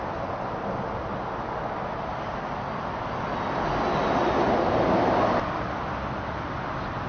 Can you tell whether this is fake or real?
real